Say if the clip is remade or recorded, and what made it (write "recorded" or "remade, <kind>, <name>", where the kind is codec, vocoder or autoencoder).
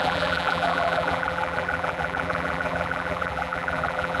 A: remade, vocoder, BigVGAN v2